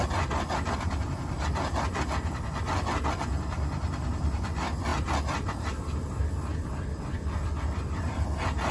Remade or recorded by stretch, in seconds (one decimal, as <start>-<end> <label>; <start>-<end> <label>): 0.0-8.7 recorded